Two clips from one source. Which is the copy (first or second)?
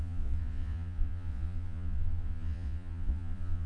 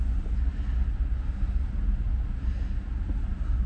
first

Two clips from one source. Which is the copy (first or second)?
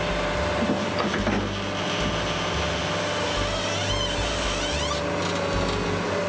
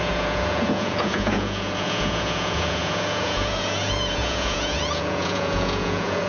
second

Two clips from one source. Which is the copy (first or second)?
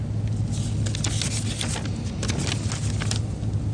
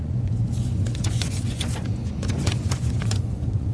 second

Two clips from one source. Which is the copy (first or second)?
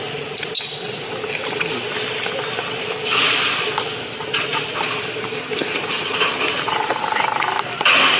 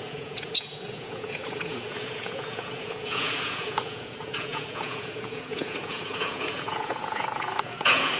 second